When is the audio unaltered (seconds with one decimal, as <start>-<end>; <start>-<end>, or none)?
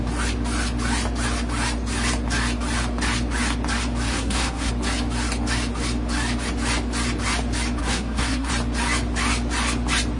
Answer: 0.0-4.1; 4.7-7.8; 8.5-10.2